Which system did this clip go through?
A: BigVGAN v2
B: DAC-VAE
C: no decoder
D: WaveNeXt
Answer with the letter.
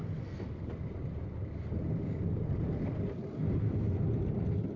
C